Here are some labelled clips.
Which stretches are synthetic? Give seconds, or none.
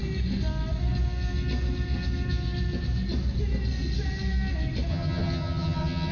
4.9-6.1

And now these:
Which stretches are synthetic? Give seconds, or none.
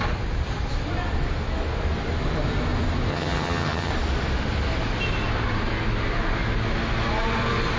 3.1-3.9